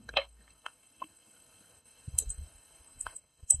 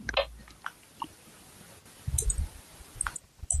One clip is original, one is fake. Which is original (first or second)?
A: second